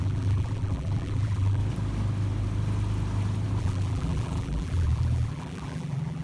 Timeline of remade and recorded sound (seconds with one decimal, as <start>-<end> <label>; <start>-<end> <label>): 0.0-1.6 remade; 1.6-3.6 recorded; 3.6-6.2 remade